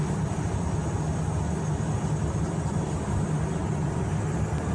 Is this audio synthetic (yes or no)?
no